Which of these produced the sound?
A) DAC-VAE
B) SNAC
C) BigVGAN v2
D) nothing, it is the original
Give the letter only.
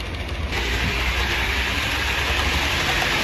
D